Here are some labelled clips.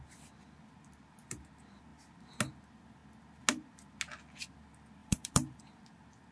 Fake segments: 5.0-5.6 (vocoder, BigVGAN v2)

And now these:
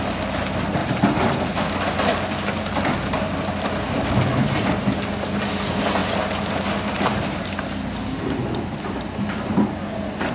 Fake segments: 0.8-1.6 (vocoder, BigVGAN v2)

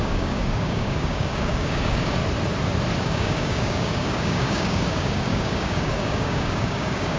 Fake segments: 0.0-2.2 (codec, DAC); 3.0-7.2